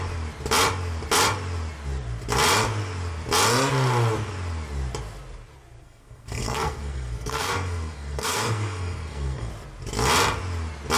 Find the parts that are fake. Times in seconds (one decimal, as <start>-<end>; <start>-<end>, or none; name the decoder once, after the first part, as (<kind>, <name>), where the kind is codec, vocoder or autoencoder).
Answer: 5.8-9.5 (codec, SNAC)